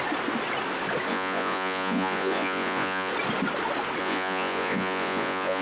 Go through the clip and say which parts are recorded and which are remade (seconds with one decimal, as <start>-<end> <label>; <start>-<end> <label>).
0.0-1.1 recorded; 1.1-3.1 remade; 3.1-4.0 recorded; 4.0-5.6 remade